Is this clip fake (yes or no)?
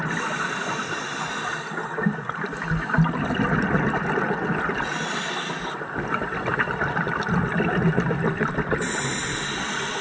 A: no